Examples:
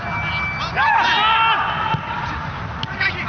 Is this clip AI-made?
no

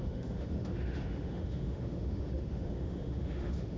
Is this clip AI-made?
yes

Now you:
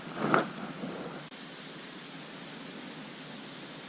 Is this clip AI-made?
no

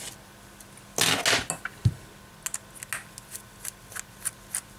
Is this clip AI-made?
no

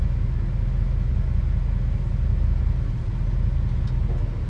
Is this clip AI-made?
no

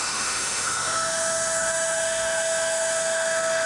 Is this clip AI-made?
yes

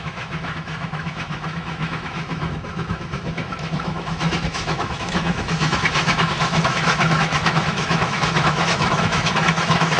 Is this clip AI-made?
yes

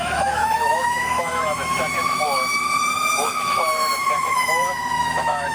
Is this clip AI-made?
yes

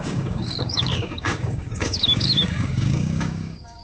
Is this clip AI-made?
yes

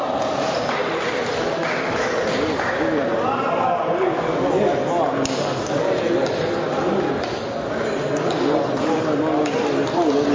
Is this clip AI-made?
no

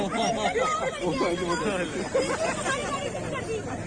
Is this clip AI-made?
no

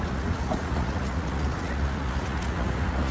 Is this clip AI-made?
yes